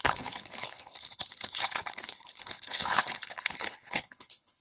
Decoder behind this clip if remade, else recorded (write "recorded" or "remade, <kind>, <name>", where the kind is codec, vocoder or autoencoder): remade, codec, HILCodec